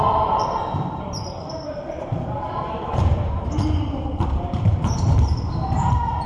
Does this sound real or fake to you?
fake